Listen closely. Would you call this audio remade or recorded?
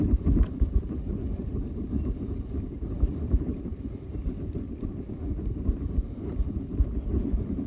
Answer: remade